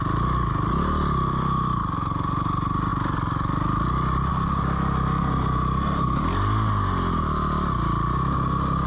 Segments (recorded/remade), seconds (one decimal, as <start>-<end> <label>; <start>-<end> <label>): 0.0-8.9 recorded